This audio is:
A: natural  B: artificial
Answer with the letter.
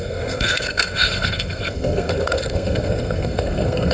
B